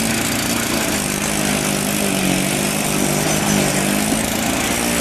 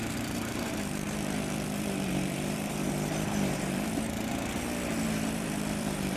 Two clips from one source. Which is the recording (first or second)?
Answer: first